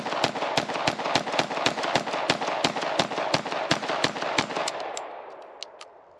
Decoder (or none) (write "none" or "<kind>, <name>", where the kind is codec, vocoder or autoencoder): none